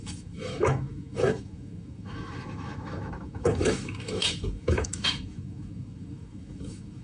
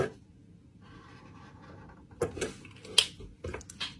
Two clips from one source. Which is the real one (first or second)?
second